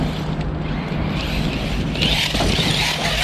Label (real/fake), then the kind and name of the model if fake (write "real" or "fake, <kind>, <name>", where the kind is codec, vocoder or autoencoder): real